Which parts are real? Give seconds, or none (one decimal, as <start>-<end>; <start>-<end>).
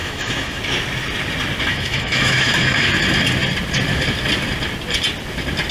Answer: 0.6-1.7; 2.9-5.7